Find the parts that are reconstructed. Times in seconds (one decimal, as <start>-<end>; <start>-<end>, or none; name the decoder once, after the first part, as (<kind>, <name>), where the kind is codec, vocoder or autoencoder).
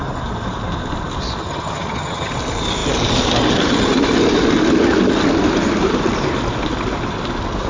1.4-2.3 (vocoder, HiFi-GAN)